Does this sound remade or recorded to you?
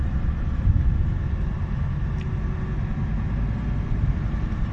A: recorded